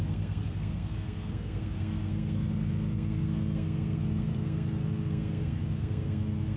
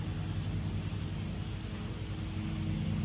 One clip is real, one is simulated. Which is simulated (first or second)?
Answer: first